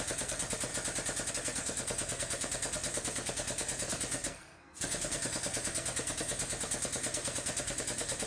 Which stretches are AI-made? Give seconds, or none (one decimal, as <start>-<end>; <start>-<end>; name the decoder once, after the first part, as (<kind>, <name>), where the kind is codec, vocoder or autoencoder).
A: 0.0-0.7 (codec, SNAC); 1.3-8.3